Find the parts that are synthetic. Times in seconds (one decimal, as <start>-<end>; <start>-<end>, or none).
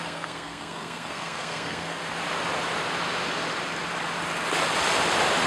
0.0-2.0